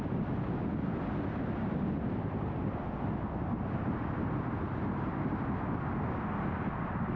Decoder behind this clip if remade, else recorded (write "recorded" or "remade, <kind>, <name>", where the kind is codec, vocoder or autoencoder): recorded